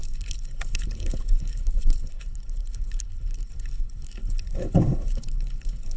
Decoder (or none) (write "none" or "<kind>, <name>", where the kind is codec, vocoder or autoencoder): codec, HILCodec